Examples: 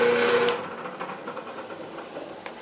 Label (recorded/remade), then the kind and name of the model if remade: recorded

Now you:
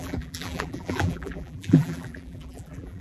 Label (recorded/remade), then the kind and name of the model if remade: remade, vocoder, BigVGAN v2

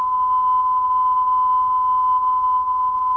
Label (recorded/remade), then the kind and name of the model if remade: recorded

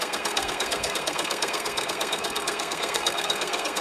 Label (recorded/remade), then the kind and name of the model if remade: remade, codec, SNAC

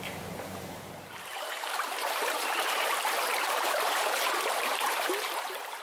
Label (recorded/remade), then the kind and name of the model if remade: remade, vocoder, BigVGAN v2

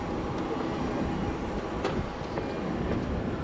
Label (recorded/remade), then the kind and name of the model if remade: recorded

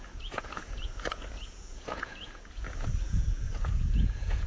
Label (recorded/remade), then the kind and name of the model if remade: remade, vocoder, Vocos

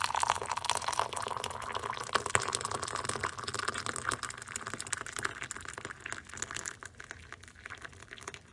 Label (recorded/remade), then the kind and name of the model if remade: recorded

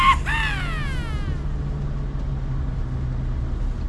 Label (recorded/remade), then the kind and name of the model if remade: recorded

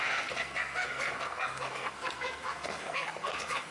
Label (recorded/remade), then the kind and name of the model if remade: remade, codec, SNAC